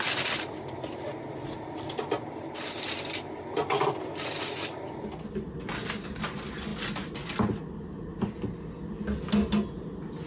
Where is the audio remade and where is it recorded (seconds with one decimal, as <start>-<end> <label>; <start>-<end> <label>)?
0.0-10.3 recorded